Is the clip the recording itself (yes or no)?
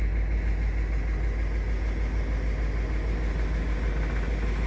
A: yes